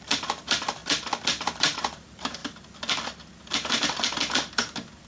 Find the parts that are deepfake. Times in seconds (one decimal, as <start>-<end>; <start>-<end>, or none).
0.0-0.8; 1.4-2.4